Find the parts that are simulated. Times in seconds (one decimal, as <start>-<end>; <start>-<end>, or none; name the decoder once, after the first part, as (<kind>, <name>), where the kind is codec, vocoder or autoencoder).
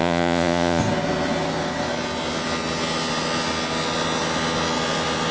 0.0-0.8 (vocoder, Vocos)